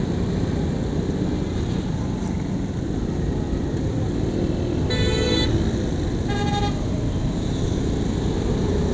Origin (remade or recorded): recorded